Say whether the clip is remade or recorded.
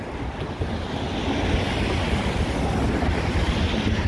recorded